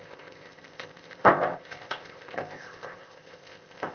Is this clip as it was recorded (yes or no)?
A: no